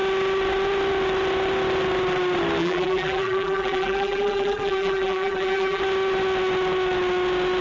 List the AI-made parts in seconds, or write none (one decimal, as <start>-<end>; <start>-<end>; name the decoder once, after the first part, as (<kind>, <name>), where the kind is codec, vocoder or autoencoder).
2.6-5.8 (vocoder, BigVGAN v2)